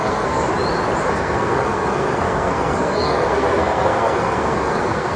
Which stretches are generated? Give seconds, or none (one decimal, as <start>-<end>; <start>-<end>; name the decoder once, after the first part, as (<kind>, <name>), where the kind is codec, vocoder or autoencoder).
0.0-0.5 (codec, SNAC); 1.0-5.2